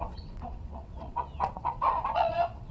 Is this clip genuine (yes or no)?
no